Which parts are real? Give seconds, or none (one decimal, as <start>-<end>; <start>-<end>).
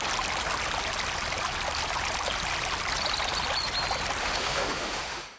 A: 0.0-4.2